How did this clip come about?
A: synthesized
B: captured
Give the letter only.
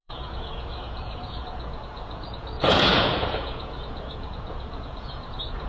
A